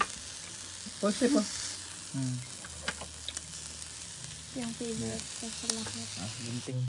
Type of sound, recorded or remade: recorded